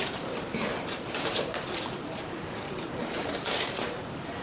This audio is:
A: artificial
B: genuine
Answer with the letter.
A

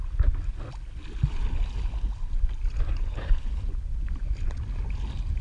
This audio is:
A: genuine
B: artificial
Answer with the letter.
A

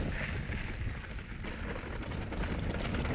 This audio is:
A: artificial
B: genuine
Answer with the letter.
B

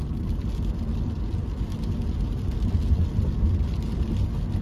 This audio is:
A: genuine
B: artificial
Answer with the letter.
A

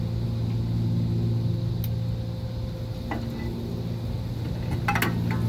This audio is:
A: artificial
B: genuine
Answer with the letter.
B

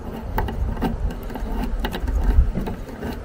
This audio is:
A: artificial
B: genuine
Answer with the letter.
B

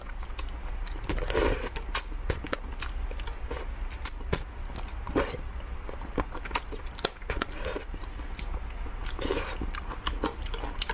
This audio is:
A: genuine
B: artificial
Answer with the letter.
A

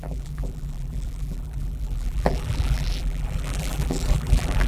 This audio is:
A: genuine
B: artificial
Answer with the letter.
B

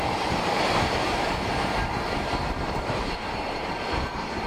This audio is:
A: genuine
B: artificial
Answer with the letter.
B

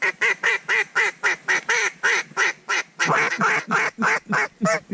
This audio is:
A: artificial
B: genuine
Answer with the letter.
A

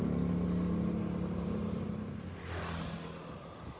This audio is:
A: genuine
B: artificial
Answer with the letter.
A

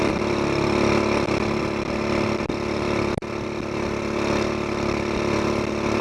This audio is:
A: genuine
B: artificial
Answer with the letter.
A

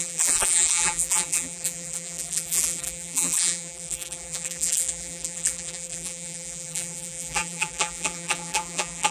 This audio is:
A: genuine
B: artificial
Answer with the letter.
B